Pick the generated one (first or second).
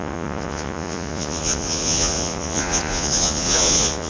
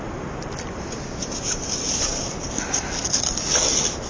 first